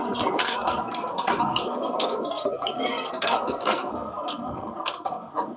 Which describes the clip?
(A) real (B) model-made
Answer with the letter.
B